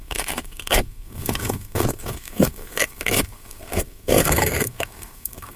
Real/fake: fake